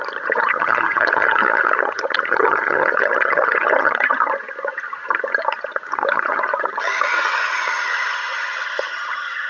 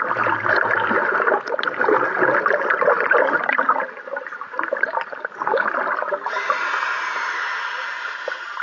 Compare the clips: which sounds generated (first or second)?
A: first